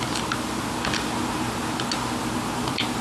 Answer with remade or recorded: recorded